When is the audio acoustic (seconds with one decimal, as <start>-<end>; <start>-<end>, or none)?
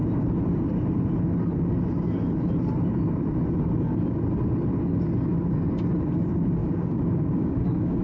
0.0-6.6